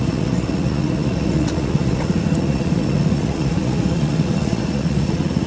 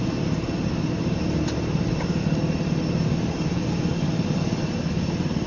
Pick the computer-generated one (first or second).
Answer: first